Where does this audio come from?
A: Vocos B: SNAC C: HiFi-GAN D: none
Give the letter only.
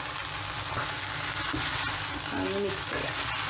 D